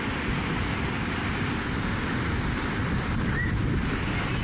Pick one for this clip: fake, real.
real